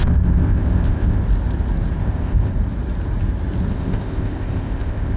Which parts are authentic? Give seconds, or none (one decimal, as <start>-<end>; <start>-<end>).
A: 1.2-2.0; 2.5-3.7